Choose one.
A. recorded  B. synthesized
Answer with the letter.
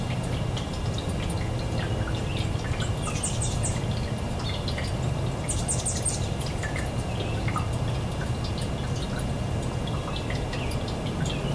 A